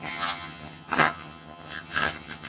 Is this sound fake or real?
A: fake